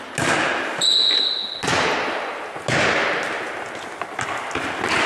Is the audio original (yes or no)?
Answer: yes